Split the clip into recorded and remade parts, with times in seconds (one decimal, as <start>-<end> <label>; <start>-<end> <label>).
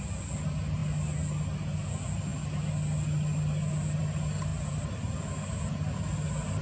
0.0-4.5 recorded; 4.5-5.6 remade; 5.6-6.6 recorded